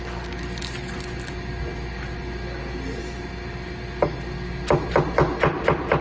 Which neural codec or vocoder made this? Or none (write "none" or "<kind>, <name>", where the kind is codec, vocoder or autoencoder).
none